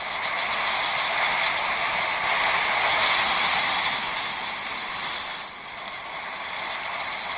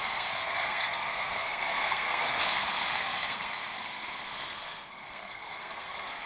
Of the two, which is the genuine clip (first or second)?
first